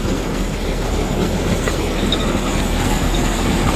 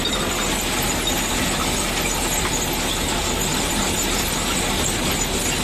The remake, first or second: first